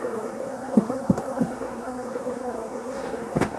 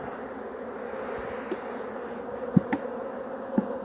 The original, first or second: second